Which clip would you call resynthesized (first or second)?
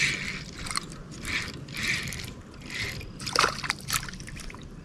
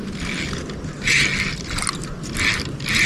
first